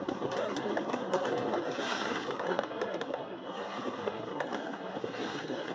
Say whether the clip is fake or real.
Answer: fake